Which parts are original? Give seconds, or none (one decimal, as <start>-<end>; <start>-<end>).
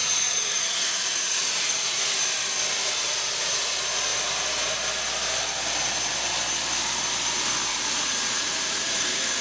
2.1-7.7; 9.0-9.4